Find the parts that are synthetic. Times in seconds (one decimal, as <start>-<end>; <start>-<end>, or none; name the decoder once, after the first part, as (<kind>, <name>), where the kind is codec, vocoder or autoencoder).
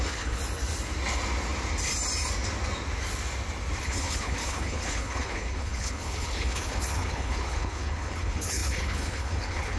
0.0-0.4 (codec, HILCodec); 3.8-9.8